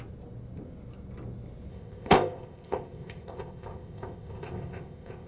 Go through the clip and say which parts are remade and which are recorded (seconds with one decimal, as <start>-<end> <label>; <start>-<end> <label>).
0.0-1.7 recorded; 1.7-5.3 remade